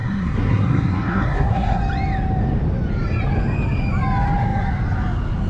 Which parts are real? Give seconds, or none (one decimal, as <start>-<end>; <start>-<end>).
1.8-5.5